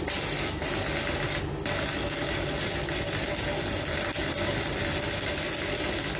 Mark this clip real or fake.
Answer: real